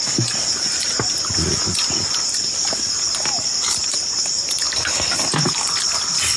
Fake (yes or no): no